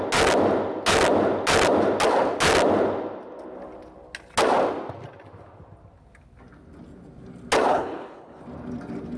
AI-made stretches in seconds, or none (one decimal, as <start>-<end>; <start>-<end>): 7.7-8.4